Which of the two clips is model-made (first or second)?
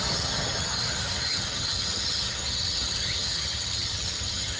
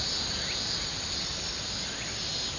first